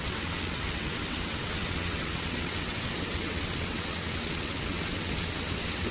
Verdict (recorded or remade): remade